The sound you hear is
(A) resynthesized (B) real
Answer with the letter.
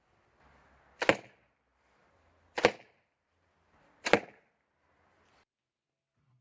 B